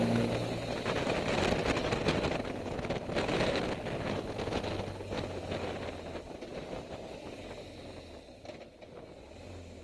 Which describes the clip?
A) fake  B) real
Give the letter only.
B